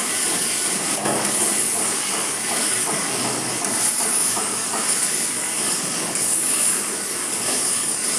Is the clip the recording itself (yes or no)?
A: no